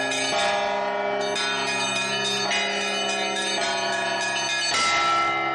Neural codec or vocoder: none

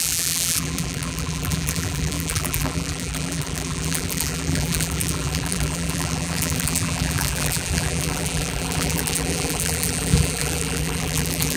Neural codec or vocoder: vocoder, BigVGAN v2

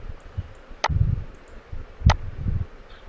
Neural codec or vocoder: none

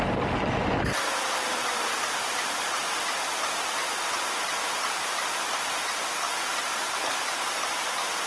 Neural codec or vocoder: none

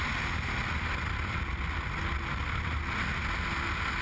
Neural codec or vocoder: none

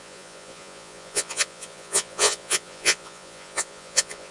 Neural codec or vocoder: vocoder, Vocos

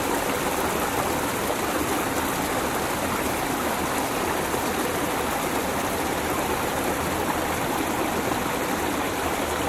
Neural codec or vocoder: none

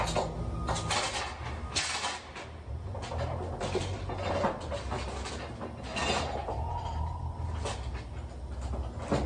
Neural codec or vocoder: none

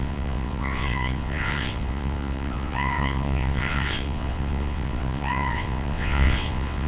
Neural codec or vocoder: vocoder, WaveNeXt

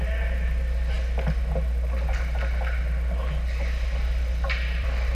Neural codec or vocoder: none